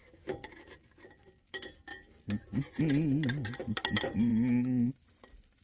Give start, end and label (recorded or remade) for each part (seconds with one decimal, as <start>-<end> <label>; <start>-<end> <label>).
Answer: 0.0-5.6 recorded